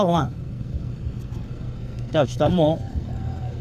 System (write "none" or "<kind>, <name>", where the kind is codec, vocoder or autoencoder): codec, SNAC